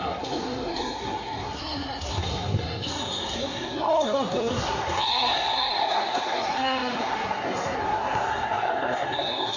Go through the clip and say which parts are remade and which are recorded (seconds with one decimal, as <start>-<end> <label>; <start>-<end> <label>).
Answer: 0.0-9.6 remade